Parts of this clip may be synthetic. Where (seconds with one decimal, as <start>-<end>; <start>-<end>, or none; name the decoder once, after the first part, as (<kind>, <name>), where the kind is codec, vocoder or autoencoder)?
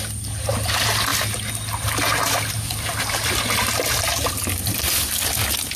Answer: none